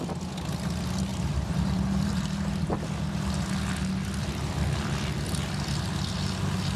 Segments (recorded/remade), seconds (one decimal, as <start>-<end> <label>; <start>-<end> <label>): 0.0-1.1 recorded; 1.1-2.7 remade; 2.7-6.8 recorded